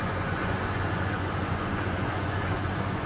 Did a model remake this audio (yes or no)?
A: yes